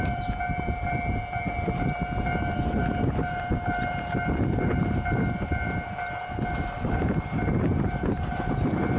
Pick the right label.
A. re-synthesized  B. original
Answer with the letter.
A